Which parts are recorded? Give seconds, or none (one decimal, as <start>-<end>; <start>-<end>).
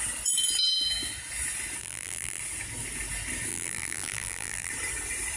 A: 0.0-1.8; 2.4-3.5; 4.7-5.4